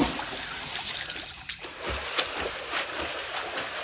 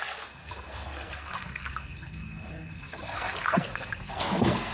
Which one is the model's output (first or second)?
second